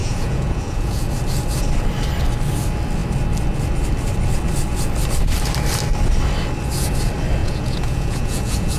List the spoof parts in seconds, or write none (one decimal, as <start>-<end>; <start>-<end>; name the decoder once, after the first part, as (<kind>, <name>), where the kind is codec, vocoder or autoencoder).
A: 0.0-1.1 (vocoder, Vocos); 7.4-8.8